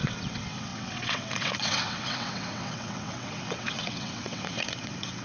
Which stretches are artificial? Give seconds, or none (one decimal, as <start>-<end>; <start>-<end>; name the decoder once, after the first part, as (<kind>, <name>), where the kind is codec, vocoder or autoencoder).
0.0-5.2 (vocoder, WaveNeXt)